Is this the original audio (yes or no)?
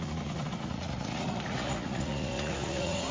no